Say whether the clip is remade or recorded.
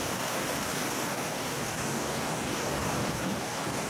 remade